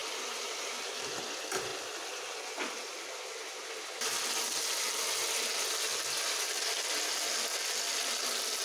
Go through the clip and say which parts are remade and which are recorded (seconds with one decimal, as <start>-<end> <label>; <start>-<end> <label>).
0.0-1.2 remade; 1.2-8.6 recorded